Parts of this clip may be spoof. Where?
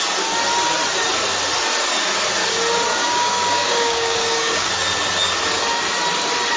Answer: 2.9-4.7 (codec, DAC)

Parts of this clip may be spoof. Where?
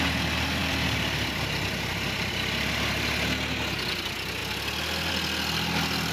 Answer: 0.6-2.3 (vocoder, BigVGAN v2)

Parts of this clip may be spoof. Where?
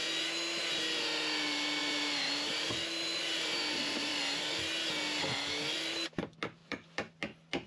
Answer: 1.8-4.2 (vocoder, BigVGAN v2); 6.6-7.2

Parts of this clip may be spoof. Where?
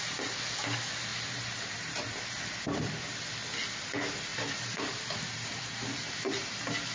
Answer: 1.1-2.2 (vocoder, BigVGAN v2); 4.3-6.3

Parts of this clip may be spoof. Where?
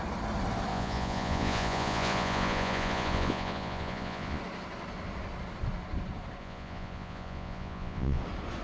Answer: 0.7-4.4 (vocoder, Vocos); 6.4-8.2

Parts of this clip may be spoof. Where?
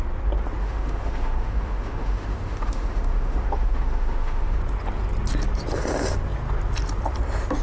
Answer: 0.6-4.6 (autoencoder, DAC-VAE)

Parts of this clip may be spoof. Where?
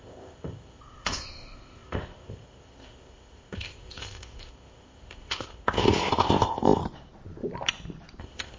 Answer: 0.0-6.8 (codec, ZipCodec); 8.2-8.6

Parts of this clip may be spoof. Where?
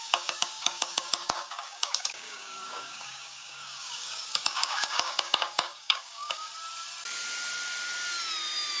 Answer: 0.0-6.5 (codec, DAC)